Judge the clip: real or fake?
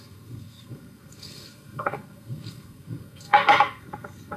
fake